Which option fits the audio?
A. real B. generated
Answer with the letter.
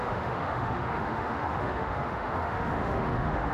B